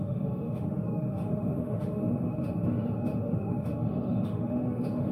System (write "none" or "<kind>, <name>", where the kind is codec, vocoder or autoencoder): autoencoder, DAC-VAE